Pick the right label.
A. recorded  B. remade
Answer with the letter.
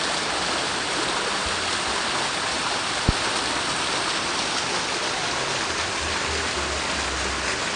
A